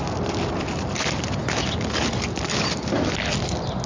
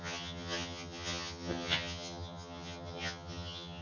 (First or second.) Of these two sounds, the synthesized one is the second